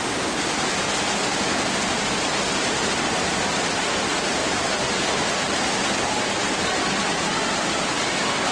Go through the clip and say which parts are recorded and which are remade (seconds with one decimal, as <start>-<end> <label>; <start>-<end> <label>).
0.0-8.5 recorded